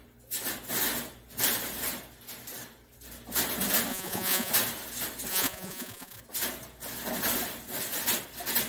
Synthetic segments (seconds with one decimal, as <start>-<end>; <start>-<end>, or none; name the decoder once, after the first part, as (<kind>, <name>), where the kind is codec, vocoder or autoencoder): 3.9-4.5 (vocoder, Vocos); 5.3-6.2

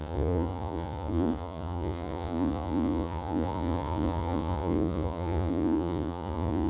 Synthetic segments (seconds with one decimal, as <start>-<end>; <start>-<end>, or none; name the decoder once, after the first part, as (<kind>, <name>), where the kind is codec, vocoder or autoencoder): 0.0-6.7 (vocoder, Vocos)

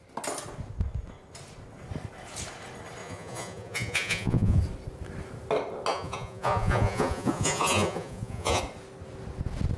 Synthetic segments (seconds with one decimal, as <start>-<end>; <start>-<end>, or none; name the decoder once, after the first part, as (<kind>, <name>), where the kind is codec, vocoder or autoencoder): 3.0-4.6 (vocoder, Vocos); 5.9-8.6

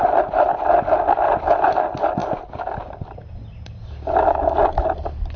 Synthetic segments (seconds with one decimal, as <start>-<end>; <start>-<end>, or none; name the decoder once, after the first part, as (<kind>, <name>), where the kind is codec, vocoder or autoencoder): none

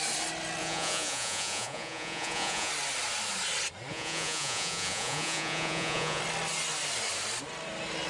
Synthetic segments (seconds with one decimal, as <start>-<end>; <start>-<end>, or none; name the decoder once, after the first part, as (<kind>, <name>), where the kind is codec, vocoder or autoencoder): 0.6-2.7 (vocoder, Vocos); 3.9-6.2